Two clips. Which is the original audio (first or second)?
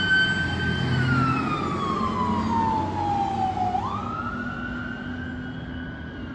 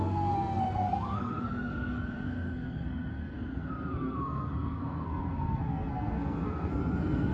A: first